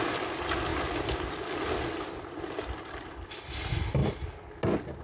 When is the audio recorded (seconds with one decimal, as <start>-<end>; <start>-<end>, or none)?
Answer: 0.0-5.0